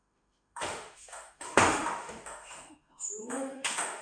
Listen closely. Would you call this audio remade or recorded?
remade